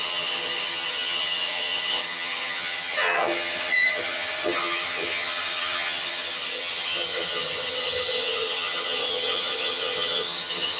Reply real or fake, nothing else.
fake